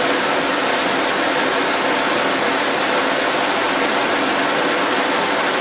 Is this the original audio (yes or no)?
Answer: yes